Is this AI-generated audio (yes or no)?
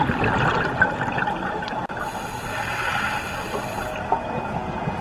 no